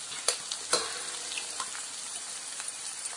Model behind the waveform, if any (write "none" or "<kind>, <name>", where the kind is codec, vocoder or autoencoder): none